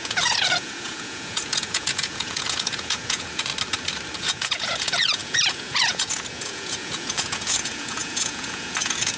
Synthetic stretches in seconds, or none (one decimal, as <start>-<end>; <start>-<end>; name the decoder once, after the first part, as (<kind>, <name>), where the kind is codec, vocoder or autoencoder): 0.0-3.5 (vocoder, Vocos); 4.2-9.2